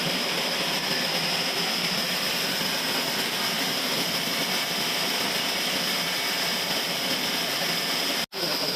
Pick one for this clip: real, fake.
real